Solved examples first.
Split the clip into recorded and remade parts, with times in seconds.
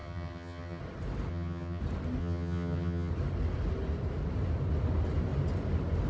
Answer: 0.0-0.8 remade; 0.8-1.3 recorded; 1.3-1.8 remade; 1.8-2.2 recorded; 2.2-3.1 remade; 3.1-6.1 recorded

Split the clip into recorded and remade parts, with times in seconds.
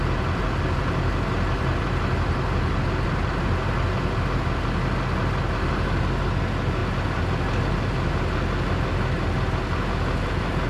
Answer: 0.0-10.7 recorded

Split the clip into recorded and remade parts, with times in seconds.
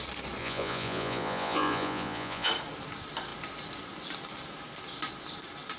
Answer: 0.0-0.4 recorded; 0.4-2.5 remade; 2.5-5.8 recorded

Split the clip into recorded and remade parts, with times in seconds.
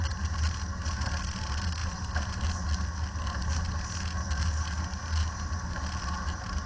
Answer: 0.0-6.7 recorded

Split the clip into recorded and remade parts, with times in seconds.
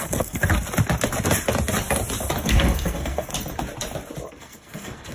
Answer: 0.0-0.4 remade; 0.4-2.4 recorded; 2.4-3.3 remade; 3.3-4.3 recorded; 4.3-5.1 remade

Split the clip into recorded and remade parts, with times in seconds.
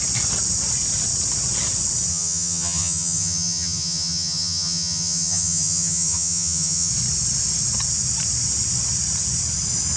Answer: 0.0-2.1 recorded; 2.1-6.9 remade; 6.9-10.0 recorded